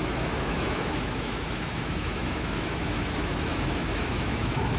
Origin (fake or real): fake